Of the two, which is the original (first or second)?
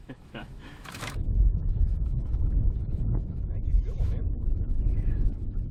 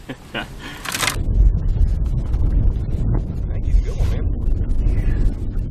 second